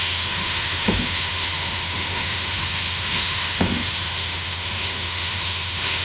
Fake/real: fake